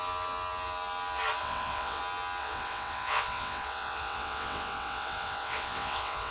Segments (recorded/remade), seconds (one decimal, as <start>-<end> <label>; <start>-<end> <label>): 0.0-1.4 recorded; 1.4-2.0 remade; 2.0-2.4 recorded; 2.4-6.3 remade